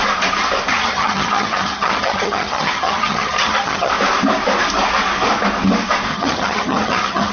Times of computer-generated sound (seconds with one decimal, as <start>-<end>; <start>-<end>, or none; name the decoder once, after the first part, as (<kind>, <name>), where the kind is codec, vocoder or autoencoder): 0.7-3.9 (vocoder, HiFi-GAN); 6.1-7.3